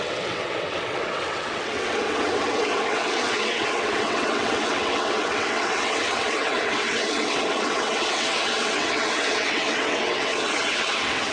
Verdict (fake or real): fake